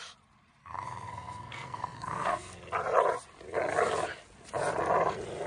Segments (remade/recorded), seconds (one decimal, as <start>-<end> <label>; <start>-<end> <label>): 0.0-0.6 recorded; 0.6-2.6 remade; 2.6-5.5 recorded